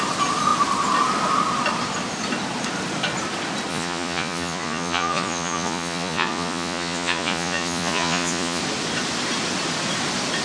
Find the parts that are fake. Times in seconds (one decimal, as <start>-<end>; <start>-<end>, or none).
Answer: 3.7-8.6